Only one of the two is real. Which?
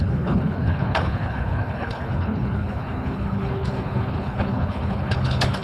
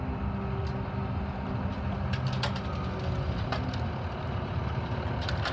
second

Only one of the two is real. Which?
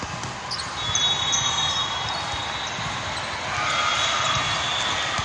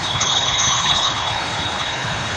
first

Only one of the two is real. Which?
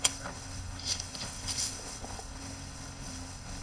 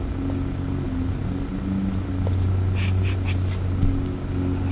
second